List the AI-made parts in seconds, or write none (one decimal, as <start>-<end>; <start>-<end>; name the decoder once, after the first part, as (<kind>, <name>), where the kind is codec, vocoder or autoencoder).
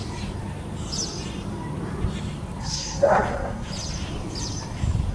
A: 2.6-3.7 (codec, SNAC)